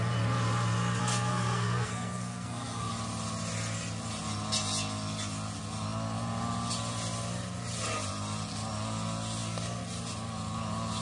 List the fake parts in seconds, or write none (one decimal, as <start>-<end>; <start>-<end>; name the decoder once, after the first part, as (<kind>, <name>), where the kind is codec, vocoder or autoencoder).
1.0-2.9 (codec, SNAC)